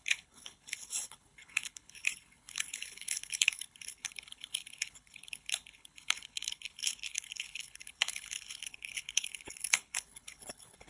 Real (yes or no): no